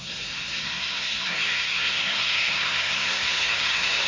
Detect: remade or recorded remade